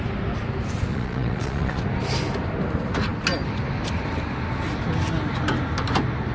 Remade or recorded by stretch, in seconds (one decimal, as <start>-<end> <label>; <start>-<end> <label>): 0.0-0.9 recorded; 0.9-1.8 remade; 1.8-6.3 recorded